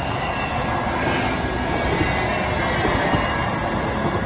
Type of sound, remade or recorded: recorded